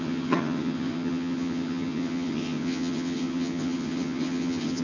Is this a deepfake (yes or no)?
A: yes